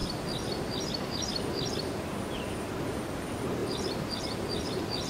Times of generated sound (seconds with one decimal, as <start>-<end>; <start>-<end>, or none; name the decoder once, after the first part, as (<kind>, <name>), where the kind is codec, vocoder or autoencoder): none